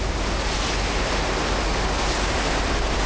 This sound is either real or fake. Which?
real